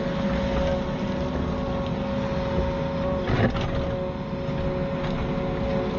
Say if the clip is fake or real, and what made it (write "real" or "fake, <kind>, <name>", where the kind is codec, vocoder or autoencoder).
real